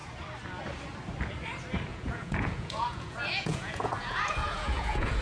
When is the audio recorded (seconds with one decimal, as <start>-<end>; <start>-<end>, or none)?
0.0-1.9